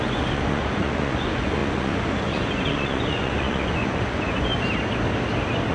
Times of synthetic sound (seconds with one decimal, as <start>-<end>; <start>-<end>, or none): 0.0-4.5